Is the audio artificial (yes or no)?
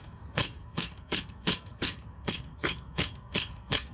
yes